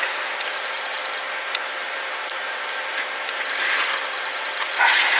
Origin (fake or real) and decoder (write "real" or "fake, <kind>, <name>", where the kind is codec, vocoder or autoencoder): fake, vocoder, BigVGAN v2